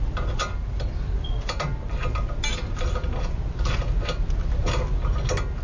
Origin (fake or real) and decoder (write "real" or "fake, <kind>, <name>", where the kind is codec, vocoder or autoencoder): real